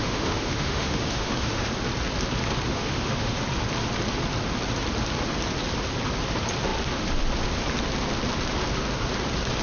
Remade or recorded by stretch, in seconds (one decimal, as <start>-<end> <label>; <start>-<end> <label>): 0.0-1.7 remade; 1.7-2.7 recorded; 2.7-3.4 remade; 3.4-9.6 recorded